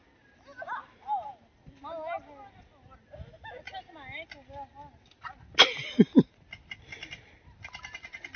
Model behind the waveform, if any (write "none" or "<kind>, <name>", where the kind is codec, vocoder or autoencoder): none